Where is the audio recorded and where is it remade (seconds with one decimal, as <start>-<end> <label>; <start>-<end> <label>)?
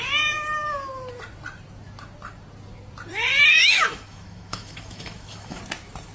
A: 0.0-3.5 recorded; 3.5-5.6 remade; 5.6-6.1 recorded